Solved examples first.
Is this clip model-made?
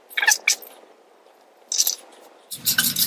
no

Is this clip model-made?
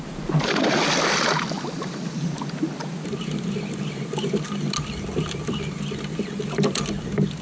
no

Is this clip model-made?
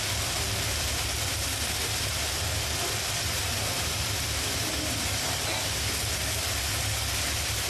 no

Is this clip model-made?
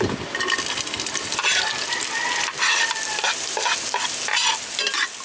no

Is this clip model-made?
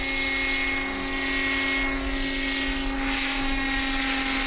no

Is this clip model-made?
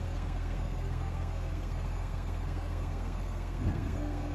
yes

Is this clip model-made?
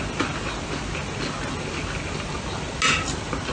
no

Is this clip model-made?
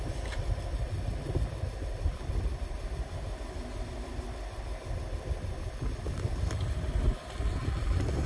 no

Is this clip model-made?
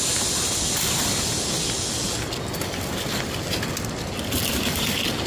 no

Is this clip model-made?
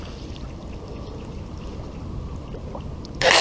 no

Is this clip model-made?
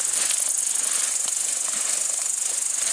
no